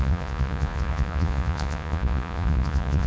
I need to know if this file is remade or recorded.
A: remade